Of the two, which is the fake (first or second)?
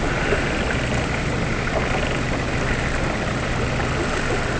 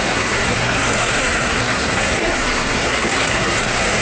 second